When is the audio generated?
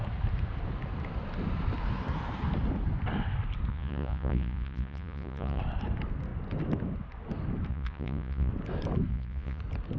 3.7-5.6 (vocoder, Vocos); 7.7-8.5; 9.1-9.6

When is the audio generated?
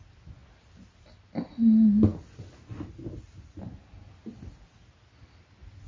none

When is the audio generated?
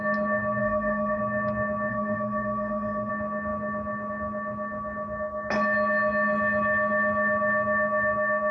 0.6-1.2 (codec, SNAC); 1.9-3.1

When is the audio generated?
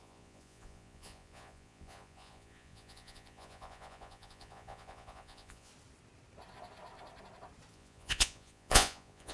0.0-5.7 (vocoder, Vocos); 7.7-9.3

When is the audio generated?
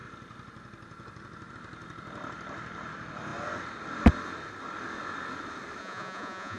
5.8-6.6 (vocoder, Vocos)